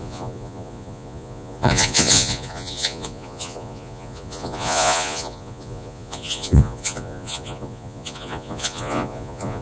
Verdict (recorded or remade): remade